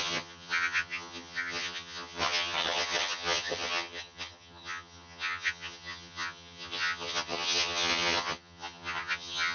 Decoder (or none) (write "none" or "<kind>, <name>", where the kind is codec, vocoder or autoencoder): vocoder, HiFi-GAN